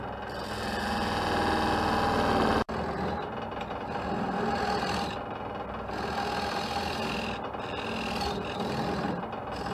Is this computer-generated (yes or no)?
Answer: no